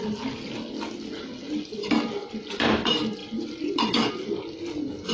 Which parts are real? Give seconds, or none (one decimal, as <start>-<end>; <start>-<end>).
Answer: 0.0-5.1